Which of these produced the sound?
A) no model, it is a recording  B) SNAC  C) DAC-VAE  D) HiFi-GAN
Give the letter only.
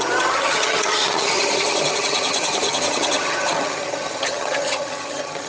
D